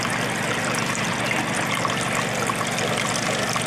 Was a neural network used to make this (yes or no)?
no